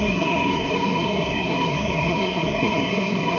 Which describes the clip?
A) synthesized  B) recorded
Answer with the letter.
A